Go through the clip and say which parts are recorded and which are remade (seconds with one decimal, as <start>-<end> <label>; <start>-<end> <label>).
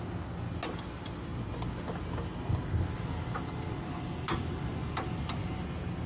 0.0-4.8 recorded; 4.8-5.6 remade; 5.6-6.1 recorded